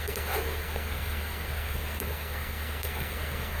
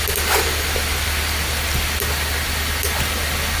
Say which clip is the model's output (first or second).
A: first